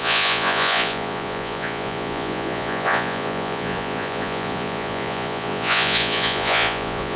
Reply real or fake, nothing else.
fake